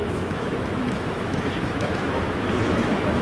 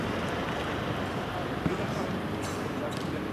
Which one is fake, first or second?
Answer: first